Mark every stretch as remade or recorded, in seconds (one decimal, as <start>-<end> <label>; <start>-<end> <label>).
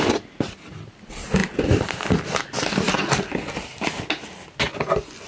0.0-5.3 recorded